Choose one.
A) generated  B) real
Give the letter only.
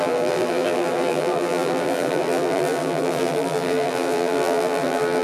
A